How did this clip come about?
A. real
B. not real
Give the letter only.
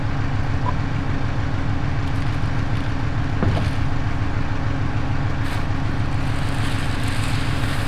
A